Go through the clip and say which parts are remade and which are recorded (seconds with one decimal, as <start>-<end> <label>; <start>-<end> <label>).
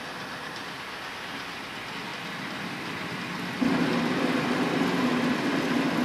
0.0-2.1 recorded; 2.1-5.3 remade; 5.3-6.0 recorded